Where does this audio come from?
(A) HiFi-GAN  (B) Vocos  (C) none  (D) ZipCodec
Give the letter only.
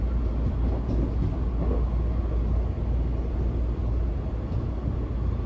C